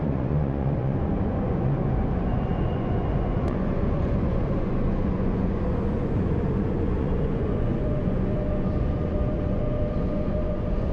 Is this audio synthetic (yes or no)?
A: yes